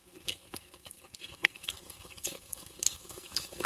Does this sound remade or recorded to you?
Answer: remade